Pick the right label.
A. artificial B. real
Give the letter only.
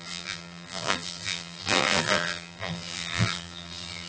A